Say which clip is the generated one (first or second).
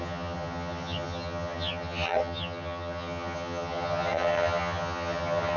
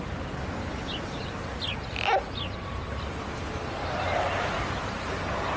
first